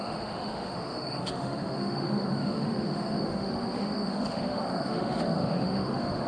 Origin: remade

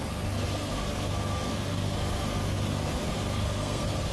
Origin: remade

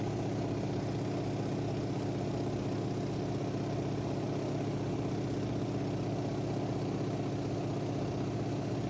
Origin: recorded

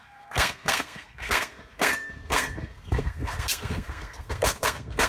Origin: remade